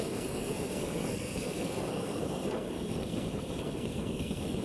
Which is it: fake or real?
fake